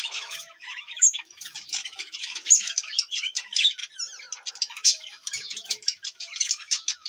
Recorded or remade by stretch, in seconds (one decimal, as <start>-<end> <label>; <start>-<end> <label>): 0.0-3.8 remade; 3.8-4.5 recorded; 4.5-7.1 remade